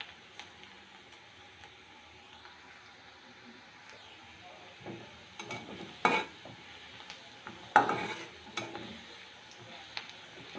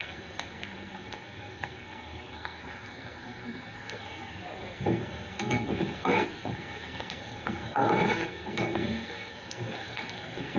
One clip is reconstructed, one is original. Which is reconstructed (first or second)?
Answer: second